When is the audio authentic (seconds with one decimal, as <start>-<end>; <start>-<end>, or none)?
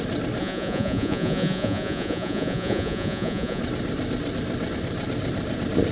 0.0-0.4; 3.6-5.9